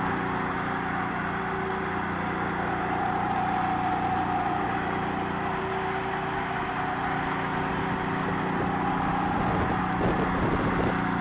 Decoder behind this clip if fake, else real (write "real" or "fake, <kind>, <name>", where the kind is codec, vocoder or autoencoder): real